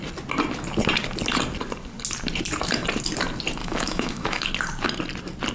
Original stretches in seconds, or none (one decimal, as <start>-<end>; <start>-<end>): 0.0-3.6; 4.5-5.5